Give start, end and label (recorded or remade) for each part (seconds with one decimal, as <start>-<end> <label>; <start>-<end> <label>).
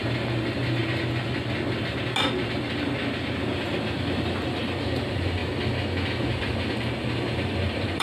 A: 0.0-0.8 remade; 0.8-3.4 recorded; 3.4-5.4 remade; 5.4-6.3 recorded; 6.3-8.0 remade